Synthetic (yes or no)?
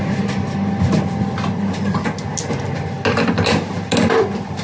no